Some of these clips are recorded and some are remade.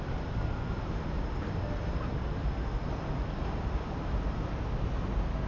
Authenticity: recorded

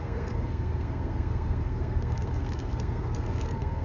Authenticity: remade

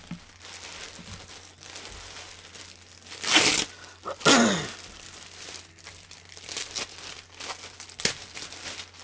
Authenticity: recorded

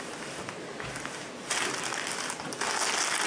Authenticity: recorded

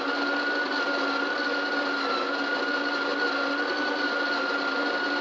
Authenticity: recorded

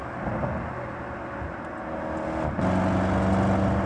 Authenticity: recorded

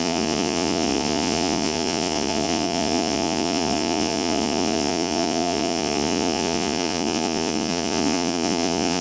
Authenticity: remade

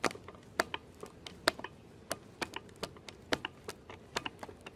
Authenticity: recorded